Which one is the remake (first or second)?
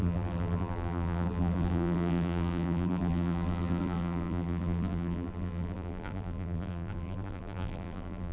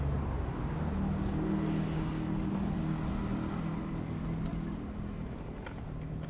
first